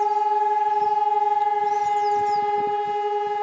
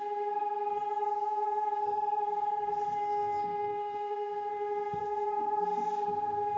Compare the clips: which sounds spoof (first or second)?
second